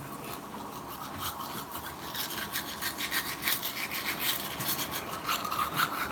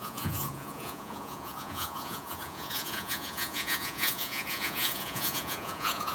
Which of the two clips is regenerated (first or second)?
second